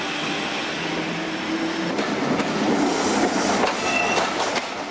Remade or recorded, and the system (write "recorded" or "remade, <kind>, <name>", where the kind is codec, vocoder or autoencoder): recorded